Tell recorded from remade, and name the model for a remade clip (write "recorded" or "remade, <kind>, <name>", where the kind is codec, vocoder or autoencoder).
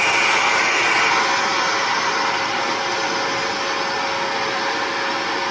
recorded